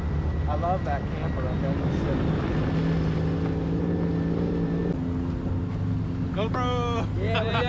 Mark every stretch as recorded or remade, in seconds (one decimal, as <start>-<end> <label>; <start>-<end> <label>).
0.0-7.7 recorded